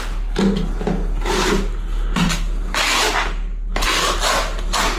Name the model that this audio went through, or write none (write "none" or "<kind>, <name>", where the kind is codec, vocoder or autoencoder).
none